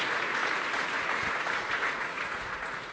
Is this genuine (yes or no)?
no